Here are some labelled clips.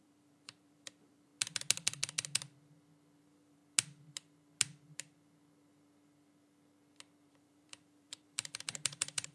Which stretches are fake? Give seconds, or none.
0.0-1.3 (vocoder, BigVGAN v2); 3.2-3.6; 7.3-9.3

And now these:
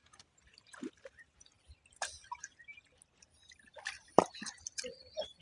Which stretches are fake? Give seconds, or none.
0.0-0.9 (vocoder, BigVGAN v2); 3.7-5.4

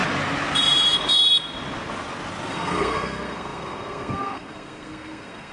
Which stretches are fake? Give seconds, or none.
2.5-5.5 (codec, SNAC)

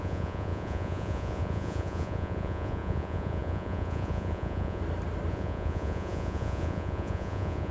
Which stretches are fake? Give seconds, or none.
0.0-4.8 (vocoder, Vocos); 5.3-7.7